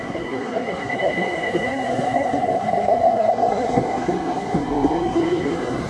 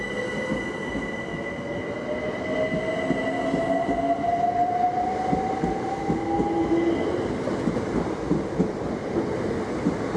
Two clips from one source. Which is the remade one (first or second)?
first